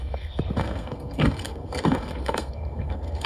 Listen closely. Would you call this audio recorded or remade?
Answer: remade